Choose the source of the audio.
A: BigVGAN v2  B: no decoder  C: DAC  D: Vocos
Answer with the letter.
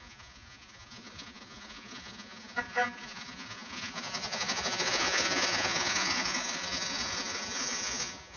D